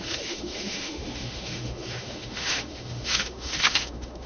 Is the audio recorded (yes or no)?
no